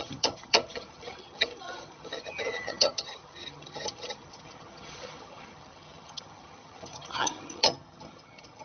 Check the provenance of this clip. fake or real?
fake